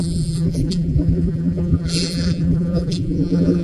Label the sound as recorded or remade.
remade